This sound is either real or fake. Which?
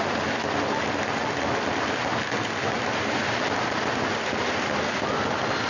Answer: real